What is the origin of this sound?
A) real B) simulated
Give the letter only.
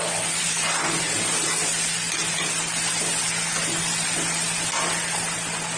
A